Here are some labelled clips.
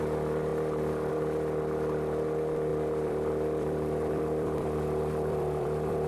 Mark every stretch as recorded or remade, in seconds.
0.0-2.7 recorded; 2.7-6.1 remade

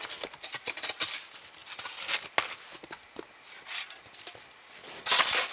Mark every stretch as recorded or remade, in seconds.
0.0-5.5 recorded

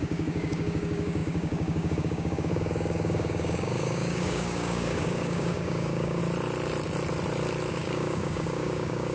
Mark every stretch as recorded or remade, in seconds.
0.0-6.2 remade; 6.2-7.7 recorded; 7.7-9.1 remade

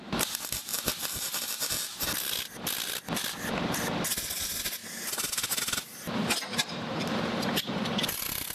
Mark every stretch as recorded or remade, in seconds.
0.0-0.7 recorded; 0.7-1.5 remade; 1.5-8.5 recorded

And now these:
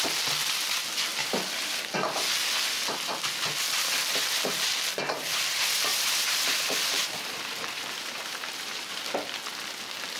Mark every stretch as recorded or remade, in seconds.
0.0-5.9 recorded; 5.9-9.0 remade; 9.0-10.2 recorded

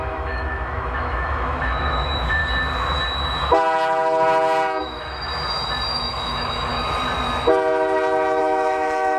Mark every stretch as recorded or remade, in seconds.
0.0-2.4 remade; 2.4-4.8 recorded; 4.8-5.3 remade; 5.3-5.9 recorded; 5.9-6.7 remade; 6.7-8.4 recorded; 8.4-9.2 remade